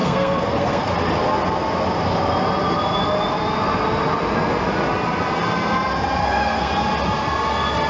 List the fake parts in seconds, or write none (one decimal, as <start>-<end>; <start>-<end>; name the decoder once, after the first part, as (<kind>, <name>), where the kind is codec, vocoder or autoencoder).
0.0-0.9 (codec, SNAC); 6.2-6.7